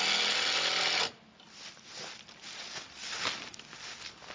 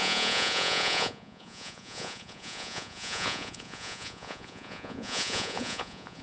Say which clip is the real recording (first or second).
first